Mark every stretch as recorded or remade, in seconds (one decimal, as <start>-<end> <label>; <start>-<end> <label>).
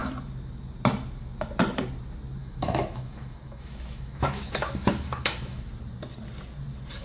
0.0-2.4 recorded; 2.4-5.7 remade; 5.7-7.0 recorded